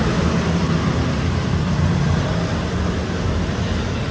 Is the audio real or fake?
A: real